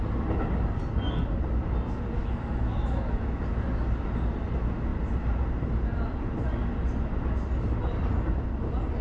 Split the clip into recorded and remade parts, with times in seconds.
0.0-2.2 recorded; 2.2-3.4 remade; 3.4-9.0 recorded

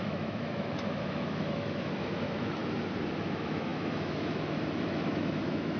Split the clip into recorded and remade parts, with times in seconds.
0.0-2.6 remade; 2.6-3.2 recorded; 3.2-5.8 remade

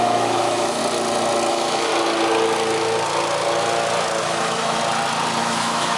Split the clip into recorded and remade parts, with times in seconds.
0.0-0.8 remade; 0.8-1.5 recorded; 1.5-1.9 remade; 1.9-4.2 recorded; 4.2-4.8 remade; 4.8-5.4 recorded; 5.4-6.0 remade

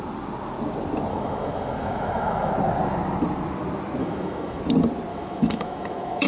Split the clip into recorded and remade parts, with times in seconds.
0.0-1.1 recorded; 1.1-2.5 remade; 2.5-4.0 recorded; 4.0-4.6 remade; 4.6-5.1 recorded; 5.1-6.3 remade

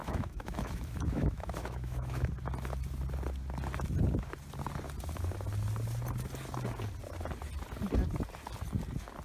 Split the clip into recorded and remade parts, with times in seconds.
0.0-2.3 remade; 2.3-9.2 recorded

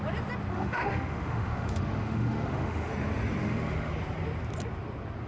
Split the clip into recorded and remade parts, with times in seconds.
0.0-0.5 recorded; 0.5-2.9 remade; 2.9-3.4 recorded; 3.4-3.9 remade; 3.9-5.3 recorded